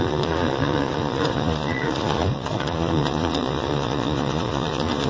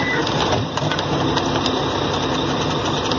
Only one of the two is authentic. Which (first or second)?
second